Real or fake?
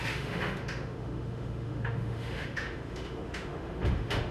fake